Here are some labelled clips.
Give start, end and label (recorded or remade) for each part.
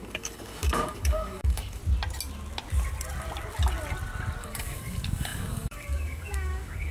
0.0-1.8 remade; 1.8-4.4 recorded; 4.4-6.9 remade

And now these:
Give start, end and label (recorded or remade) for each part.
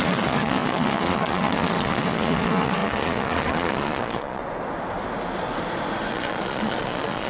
0.0-4.4 remade; 4.4-6.1 recorded; 6.1-7.3 remade